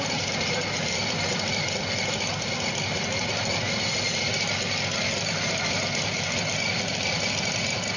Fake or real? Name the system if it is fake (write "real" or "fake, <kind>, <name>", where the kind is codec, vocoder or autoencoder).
real